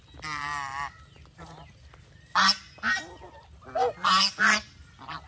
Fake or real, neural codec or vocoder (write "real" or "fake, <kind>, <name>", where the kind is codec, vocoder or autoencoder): real